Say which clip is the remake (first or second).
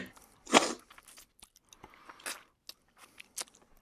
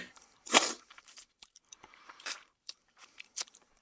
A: second